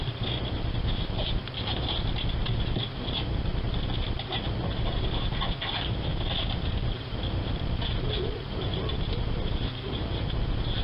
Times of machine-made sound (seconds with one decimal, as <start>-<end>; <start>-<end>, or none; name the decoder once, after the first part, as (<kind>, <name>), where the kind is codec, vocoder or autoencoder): 6.1-8.9 (vocoder, BigVGAN v2)